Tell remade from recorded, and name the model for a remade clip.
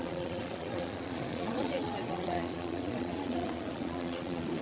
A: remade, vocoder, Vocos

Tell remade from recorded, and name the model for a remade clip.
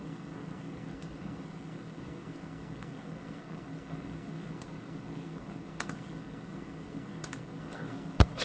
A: remade, codec, SNAC